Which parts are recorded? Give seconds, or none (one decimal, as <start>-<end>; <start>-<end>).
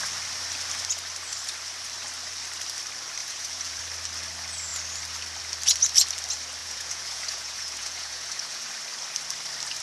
0.0-3.2; 3.8-6.6; 8.7-9.8